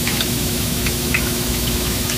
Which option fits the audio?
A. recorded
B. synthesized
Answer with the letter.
B